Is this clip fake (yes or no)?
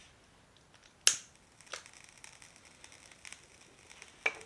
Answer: no